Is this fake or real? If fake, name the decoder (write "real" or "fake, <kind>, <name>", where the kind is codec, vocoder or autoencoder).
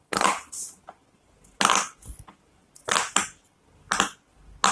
real